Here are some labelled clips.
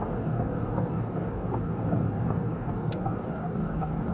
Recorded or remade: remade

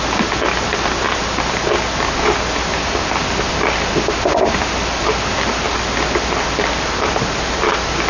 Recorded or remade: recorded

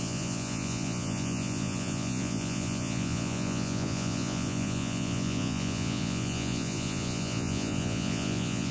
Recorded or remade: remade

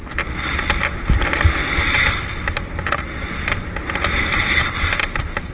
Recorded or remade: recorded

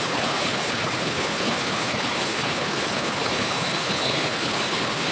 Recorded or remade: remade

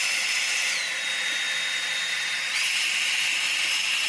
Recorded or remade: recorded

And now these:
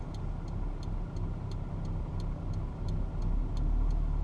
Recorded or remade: recorded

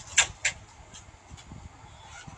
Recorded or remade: recorded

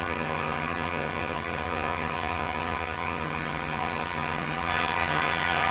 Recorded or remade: remade